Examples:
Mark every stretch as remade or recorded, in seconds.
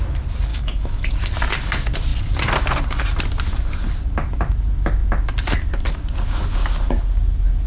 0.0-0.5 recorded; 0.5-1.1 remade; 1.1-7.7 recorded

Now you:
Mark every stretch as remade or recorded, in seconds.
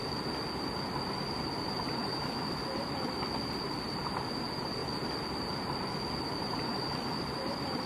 0.0-2.1 recorded; 2.1-2.6 remade; 2.6-7.9 recorded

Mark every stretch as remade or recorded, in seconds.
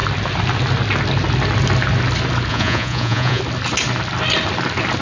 0.0-2.5 recorded; 2.5-3.4 remade; 3.4-5.0 recorded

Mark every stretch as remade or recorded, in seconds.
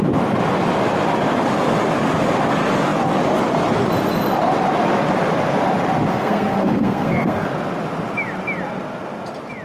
0.0-6.1 recorded; 6.1-7.5 remade; 7.5-9.6 recorded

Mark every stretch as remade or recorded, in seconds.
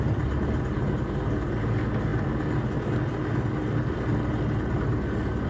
0.0-5.5 recorded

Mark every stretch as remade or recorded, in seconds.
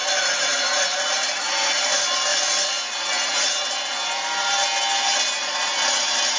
0.0-1.8 remade; 1.8-6.4 recorded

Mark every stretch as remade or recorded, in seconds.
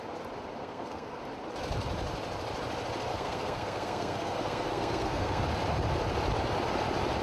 0.0-0.6 recorded; 0.6-1.2 remade; 1.2-3.1 recorded; 3.1-5.4 remade; 5.4-7.2 recorded